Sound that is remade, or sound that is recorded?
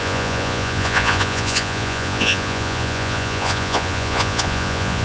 remade